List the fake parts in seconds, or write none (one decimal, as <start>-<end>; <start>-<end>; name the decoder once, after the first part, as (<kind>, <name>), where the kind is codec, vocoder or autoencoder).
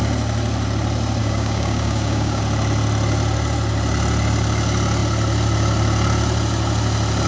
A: 1.2-2.4 (codec, DAC)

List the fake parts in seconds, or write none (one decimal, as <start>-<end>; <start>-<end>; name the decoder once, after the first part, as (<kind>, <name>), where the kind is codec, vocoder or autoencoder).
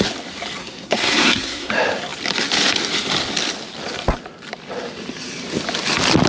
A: 0.6-1.7 (codec, SNAC)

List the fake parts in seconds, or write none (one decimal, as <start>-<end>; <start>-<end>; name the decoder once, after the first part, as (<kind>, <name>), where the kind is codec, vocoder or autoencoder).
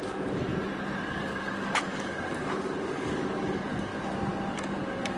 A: 0.0-0.5 (codec, DAC); 1.1-3.9; 4.5-5.2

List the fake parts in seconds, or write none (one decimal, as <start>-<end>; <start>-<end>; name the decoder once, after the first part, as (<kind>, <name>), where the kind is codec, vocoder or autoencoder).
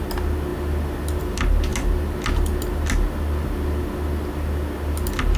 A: none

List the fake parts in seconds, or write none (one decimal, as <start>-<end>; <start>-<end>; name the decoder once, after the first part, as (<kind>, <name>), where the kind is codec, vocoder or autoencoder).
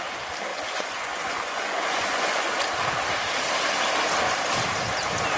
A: 0.5-2.5 (vocoder, Vocos)